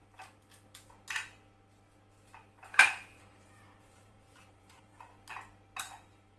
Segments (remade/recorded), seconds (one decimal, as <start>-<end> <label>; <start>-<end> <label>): 0.0-3.2 recorded; 3.2-5.1 remade; 5.1-5.8 recorded; 5.8-6.4 remade